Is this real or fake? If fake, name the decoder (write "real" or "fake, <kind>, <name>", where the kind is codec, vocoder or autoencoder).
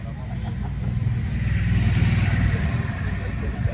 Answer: real